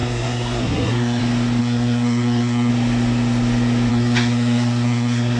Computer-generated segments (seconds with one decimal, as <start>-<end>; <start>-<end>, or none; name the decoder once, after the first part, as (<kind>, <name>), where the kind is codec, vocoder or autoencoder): 0.0-1.2 (codec, SNAC); 1.6-2.7; 3.9-5.4

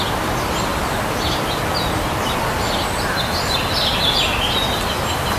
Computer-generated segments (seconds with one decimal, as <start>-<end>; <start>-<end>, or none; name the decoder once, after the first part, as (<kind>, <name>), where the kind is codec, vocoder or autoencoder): none

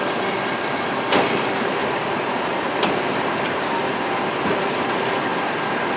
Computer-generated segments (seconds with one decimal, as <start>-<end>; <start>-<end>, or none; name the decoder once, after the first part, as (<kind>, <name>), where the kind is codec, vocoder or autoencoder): 1.8-3.7 (vocoder, BigVGAN v2); 5.3-6.0

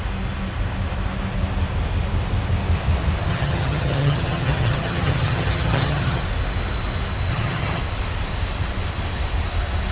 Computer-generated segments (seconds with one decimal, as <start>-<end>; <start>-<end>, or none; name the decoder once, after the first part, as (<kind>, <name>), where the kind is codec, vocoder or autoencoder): 3.3-6.2 (vocoder, HiFi-GAN); 7.3-7.8

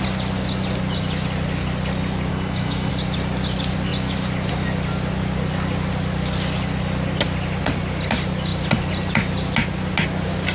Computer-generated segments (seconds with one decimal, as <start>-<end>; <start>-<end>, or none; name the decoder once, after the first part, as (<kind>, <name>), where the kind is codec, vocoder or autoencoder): 2.3-2.9 (codec, DAC)

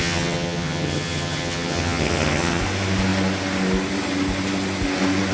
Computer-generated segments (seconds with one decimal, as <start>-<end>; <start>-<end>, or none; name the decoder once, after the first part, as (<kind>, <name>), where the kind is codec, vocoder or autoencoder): 0.0-2.6 (vocoder, HiFi-GAN)